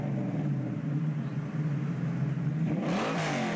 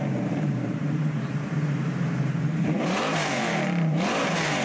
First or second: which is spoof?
second